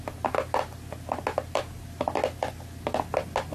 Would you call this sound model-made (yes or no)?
no